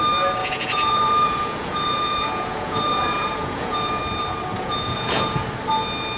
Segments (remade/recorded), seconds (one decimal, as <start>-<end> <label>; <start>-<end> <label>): 0.0-0.4 recorded; 0.4-4.0 remade; 4.0-4.5 recorded; 4.5-5.4 remade; 5.4-6.2 recorded